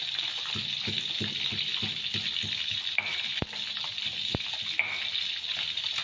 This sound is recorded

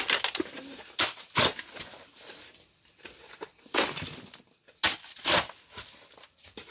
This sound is recorded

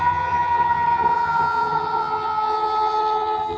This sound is remade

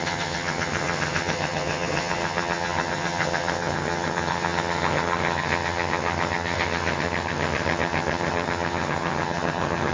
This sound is remade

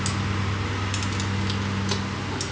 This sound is recorded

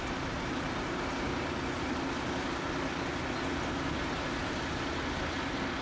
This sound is recorded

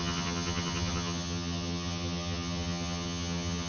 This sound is remade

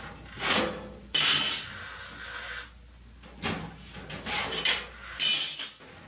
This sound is recorded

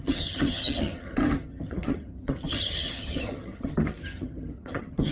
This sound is remade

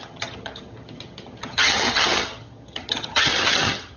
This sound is remade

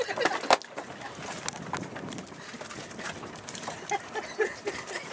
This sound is recorded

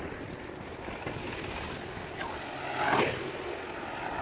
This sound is recorded